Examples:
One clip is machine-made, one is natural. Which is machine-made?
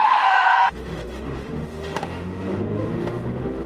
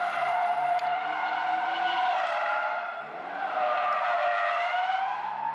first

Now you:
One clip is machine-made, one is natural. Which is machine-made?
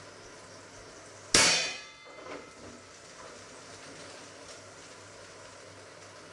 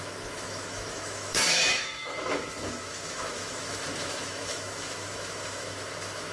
second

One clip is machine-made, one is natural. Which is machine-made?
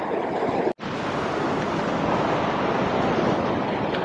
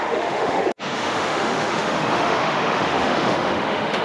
second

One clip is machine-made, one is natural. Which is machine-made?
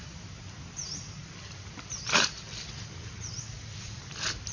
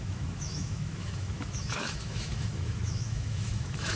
second